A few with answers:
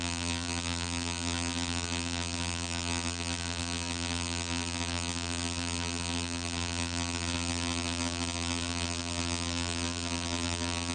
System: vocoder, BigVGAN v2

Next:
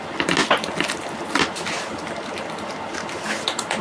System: none